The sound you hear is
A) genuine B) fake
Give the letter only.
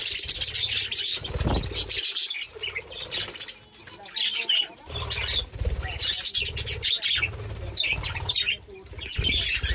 A